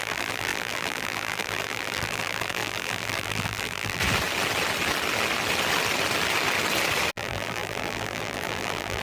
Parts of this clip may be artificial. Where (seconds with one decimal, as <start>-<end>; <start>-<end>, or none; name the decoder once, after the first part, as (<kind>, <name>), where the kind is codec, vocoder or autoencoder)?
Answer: 0.0-4.0 (vocoder, BigVGAN v2); 7.1-9.0